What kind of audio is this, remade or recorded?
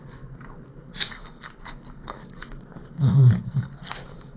remade